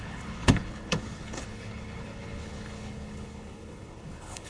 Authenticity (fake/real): fake